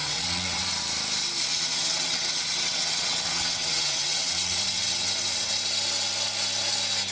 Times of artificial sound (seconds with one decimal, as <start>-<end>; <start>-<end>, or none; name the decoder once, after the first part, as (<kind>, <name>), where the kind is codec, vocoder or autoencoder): 0.0-0.6 (vocoder, WaveNeXt); 1.5-5.5